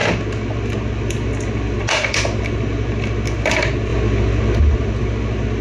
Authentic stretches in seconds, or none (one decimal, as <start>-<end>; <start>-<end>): 0.0-5.6